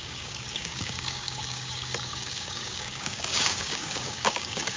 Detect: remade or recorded remade